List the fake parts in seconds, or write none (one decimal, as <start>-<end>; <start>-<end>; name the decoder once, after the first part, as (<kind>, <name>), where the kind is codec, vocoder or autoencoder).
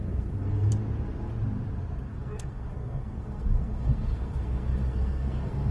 0.0-0.7 (codec, SNAC); 2.1-5.7